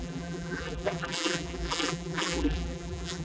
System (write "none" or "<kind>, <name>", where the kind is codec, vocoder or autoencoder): vocoder, BigVGAN v2